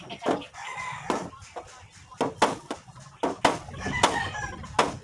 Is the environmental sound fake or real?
real